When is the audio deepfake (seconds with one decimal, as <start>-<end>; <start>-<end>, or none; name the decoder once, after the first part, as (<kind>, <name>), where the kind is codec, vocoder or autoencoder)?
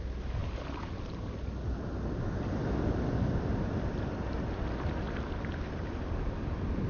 none